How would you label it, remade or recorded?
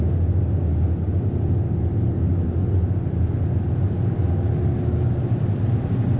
recorded